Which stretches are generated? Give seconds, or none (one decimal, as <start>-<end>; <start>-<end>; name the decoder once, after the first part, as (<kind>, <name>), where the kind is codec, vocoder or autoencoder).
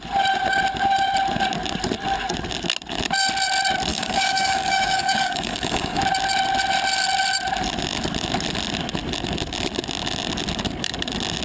3.9-6.0 (codec, DAC)